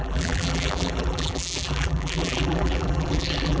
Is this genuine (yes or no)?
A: no